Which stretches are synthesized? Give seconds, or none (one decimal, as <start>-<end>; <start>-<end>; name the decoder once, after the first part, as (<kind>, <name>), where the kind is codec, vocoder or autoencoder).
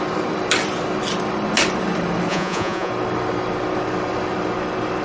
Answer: 2.3-2.9 (vocoder, Vocos)